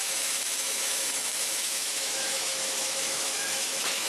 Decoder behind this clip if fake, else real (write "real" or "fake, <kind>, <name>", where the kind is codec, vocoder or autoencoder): fake, autoencoder, DAC-VAE